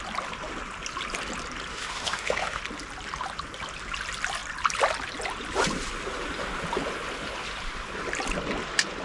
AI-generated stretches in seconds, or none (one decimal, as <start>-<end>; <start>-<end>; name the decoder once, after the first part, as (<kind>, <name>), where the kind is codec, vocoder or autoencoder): 1.7-2.6 (autoencoder, DAC-VAE)